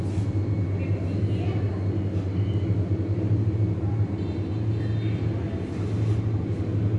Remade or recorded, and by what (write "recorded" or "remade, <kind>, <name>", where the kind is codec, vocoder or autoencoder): recorded